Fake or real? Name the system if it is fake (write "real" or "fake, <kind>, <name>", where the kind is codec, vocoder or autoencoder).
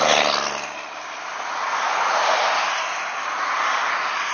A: real